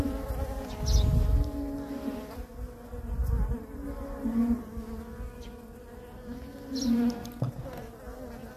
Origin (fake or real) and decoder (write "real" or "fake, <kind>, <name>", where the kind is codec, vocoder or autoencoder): real